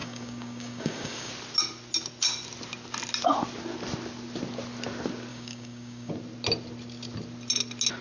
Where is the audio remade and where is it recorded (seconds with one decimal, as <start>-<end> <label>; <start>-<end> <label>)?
0.0-1.3 remade; 1.3-5.3 recorded; 5.3-6.1 remade; 6.1-8.0 recorded